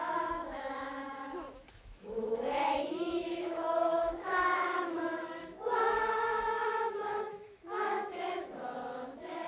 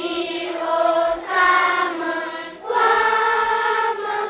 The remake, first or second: first